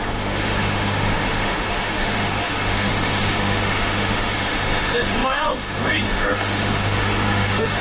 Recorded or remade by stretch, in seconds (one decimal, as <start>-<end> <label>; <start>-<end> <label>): 0.0-7.8 remade